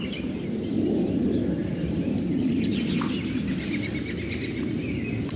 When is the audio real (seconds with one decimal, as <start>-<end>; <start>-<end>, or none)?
0.0-1.6; 2.9-5.4